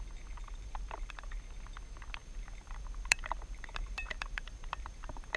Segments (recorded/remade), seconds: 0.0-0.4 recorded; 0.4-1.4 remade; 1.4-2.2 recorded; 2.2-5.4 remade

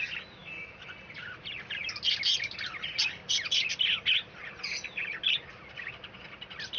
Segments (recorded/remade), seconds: 0.0-0.4 recorded; 0.4-0.9 remade; 0.9-6.8 recorded

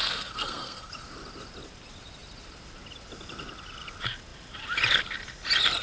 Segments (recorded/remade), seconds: 0.0-0.9 remade; 0.9-5.8 recorded

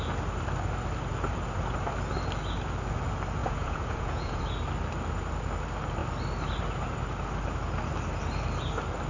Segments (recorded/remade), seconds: 0.0-3.4 recorded; 3.4-4.4 remade; 4.4-9.1 recorded